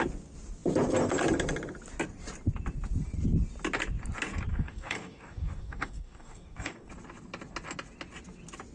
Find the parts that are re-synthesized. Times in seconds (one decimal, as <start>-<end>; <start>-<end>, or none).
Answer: 4.5-6.9